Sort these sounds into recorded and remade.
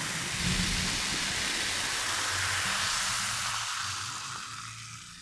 recorded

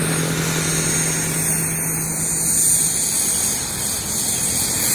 recorded